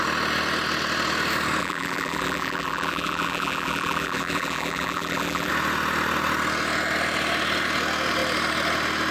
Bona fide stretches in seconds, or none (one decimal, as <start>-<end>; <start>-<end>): 0.0-1.6; 5.5-9.1